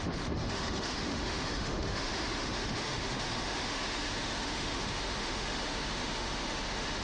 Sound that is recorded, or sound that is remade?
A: remade